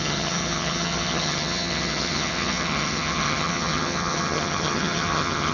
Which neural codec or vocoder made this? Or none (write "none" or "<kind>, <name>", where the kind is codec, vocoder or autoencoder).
vocoder, HiFi-GAN